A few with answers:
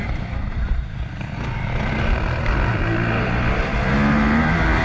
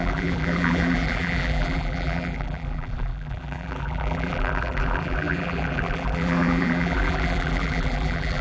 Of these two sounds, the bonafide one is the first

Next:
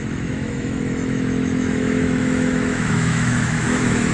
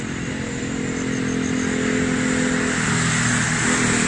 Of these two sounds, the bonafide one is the second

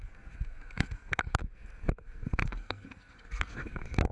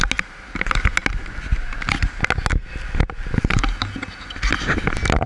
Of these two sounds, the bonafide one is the second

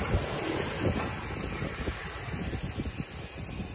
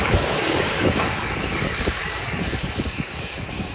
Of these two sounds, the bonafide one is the first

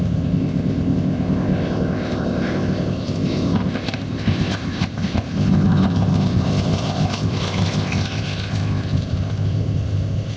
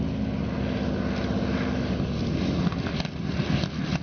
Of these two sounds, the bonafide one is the second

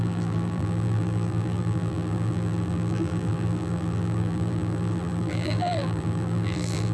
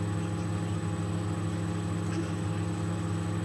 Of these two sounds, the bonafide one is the second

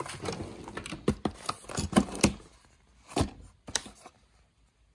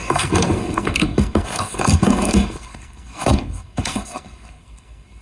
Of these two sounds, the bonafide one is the first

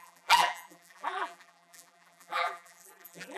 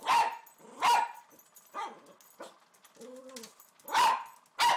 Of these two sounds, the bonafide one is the second